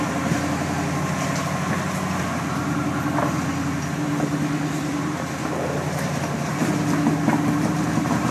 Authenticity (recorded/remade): recorded